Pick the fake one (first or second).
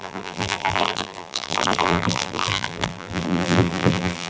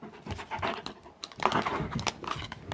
first